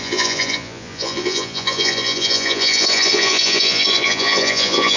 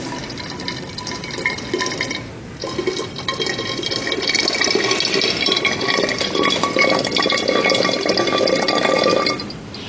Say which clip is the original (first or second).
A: second